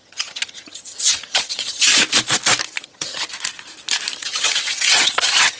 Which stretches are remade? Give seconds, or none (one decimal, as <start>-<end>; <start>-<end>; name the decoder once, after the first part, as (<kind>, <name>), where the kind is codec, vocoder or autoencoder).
0.0-1.9 (vocoder, HiFi-GAN); 2.8-3.3; 4.2-5.6